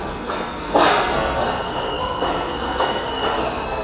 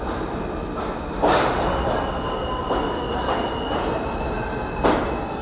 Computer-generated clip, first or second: first